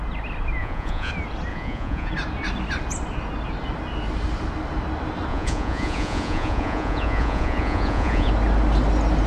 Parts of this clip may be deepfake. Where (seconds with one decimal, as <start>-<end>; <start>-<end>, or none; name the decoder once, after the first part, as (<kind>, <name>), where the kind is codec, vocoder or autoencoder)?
0.6-1.1 (vocoder, Vocos); 1.5-2.1; 5.3-8.3